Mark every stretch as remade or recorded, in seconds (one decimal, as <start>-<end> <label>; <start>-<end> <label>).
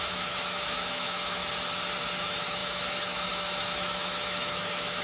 0.0-1.4 remade; 1.4-2.2 recorded; 2.2-5.0 remade